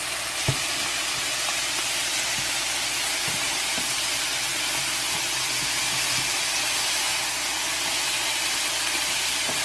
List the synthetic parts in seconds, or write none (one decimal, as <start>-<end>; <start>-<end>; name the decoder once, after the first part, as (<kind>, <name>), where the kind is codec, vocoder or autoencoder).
none